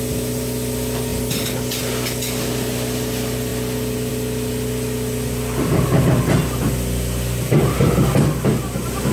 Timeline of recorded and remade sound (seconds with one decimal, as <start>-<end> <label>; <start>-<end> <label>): 0.0-9.1 recorded